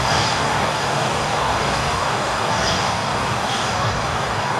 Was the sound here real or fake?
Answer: fake